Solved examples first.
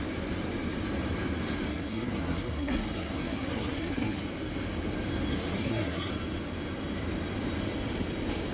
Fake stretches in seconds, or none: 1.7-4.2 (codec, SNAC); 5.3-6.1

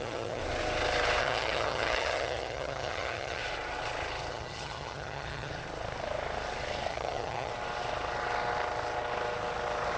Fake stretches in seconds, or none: 0.0-0.4 (vocoder, HiFi-GAN); 1.2-3.4; 4.3-5.5; 6.9-7.5

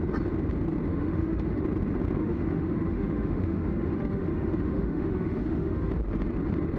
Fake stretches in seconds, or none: 0.9-1.6 (autoencoder, DAC-VAE); 2.2-5.9